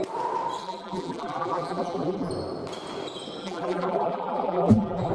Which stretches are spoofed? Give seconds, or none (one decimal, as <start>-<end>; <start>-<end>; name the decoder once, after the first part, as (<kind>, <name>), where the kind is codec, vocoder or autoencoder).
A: 0.6-2.3 (vocoder, BigVGAN v2); 3.4-5.1